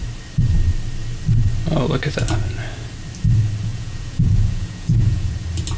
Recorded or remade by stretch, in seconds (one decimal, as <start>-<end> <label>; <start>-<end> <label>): 0.0-3.7 recorded; 3.7-5.3 remade; 5.3-5.8 recorded